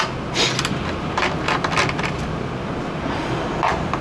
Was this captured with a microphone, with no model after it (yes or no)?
yes